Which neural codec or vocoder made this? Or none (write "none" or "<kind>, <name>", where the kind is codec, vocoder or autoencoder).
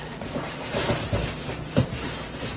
vocoder, BigVGAN v2